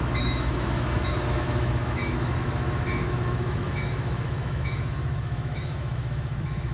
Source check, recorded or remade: remade